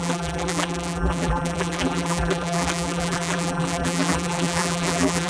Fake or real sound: fake